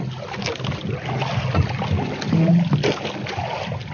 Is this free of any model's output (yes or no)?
yes